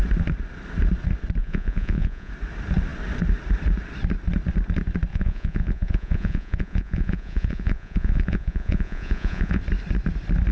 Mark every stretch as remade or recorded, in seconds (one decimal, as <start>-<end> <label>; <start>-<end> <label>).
0.0-1.4 recorded; 1.4-2.3 remade; 2.3-5.1 recorded; 5.1-9.6 remade; 9.6-10.5 recorded